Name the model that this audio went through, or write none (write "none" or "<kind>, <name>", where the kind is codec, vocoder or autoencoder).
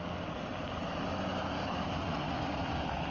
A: none